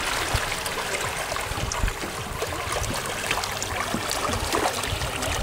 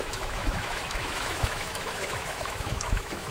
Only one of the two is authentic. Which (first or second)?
first